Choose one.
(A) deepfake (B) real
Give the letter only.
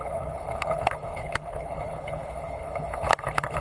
A